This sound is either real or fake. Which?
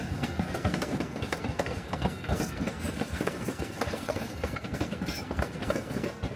fake